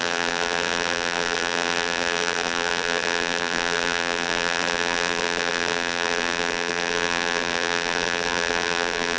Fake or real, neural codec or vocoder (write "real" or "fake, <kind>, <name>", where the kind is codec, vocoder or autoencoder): fake, vocoder, BigVGAN v2